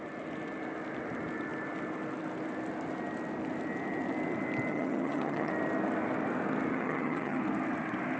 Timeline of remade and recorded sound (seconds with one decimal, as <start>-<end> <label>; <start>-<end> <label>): 0.0-4.7 recorded; 4.7-5.5 remade; 5.5-6.7 recorded; 6.7-7.4 remade; 7.4-8.2 recorded